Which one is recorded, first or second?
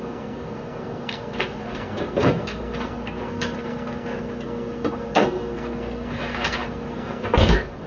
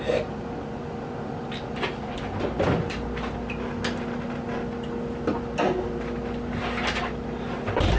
second